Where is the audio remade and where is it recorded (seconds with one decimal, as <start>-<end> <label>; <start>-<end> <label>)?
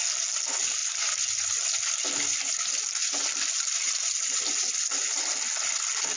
0.0-0.8 recorded; 0.8-2.5 remade; 2.5-3.0 recorded; 3.0-4.6 remade; 4.6-6.2 recorded